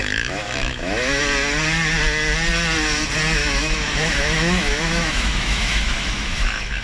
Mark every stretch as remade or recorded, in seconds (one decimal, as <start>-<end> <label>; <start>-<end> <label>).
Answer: 0.0-1.2 remade; 1.2-3.4 recorded; 3.4-6.8 remade